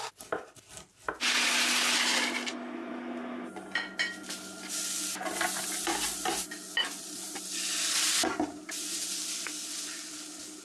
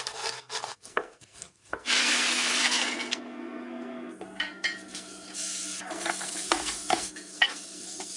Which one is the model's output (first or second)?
second